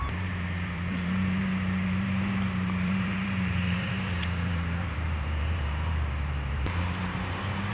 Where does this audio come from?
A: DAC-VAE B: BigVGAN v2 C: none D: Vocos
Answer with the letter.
B